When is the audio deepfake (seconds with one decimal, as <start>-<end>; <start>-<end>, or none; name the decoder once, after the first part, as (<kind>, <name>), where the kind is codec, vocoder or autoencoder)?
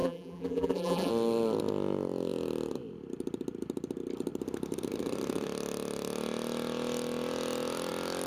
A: 0.0-1.1 (vocoder, BigVGAN v2)